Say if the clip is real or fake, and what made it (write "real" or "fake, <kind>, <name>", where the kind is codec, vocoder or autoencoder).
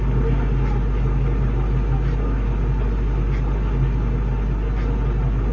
real